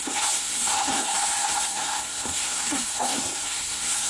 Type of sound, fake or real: fake